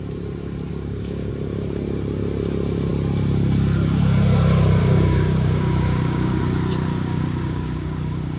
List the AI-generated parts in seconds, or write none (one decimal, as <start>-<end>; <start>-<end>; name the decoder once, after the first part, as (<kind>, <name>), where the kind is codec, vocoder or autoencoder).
0.7-1.3 (codec, DAC); 4.8-6.4; 6.9-8.4